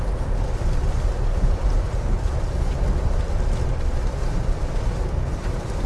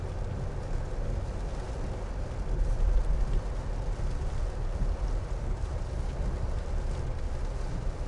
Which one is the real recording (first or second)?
second